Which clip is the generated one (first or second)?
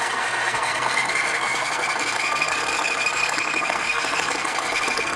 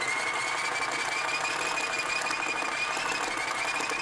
first